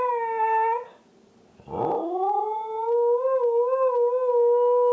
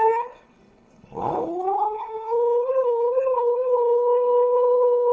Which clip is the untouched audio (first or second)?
first